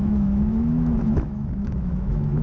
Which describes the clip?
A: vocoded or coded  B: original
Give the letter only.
A